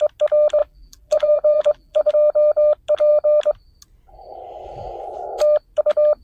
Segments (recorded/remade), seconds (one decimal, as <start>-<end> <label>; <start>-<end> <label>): 0.0-0.6 recorded; 0.6-2.1 remade; 2.1-6.2 recorded